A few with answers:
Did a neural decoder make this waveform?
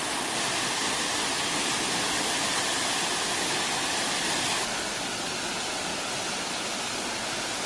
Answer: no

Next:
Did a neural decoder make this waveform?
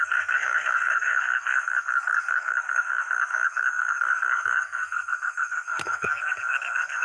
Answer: yes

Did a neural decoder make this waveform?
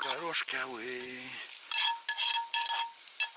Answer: no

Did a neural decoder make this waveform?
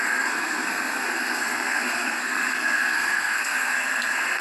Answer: yes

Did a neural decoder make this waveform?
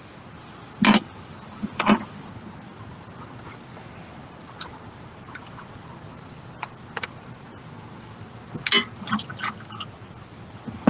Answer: no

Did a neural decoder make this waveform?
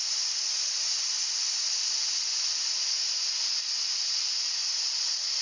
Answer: no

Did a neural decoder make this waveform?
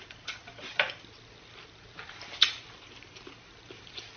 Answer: yes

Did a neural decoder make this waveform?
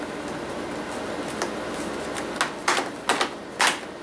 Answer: no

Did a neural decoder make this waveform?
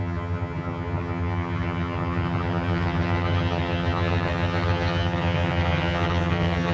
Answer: yes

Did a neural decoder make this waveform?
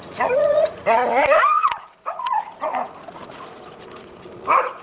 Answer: yes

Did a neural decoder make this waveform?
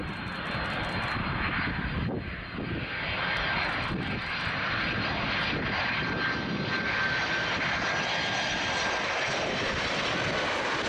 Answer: no